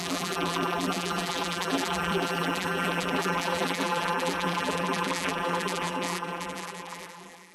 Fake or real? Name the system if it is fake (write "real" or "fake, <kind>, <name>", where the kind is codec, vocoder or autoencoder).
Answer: fake, vocoder, BigVGAN v2